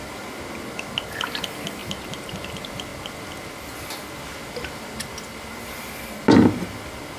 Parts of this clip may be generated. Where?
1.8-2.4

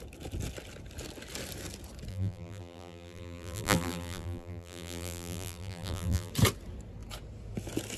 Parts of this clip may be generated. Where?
2.1-6.3

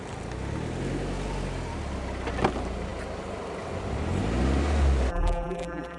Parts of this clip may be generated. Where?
5.1-6.0